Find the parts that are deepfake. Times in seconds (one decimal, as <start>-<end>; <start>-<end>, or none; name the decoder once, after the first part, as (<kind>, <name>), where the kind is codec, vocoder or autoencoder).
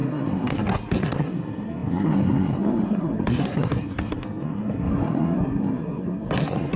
0.0-6.8 (codec, SNAC)